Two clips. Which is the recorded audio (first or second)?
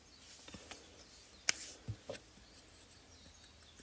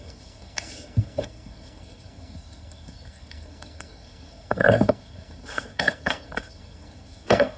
first